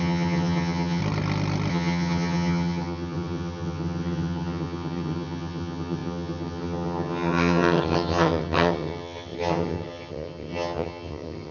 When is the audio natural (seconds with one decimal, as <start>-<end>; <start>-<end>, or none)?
1.0-1.7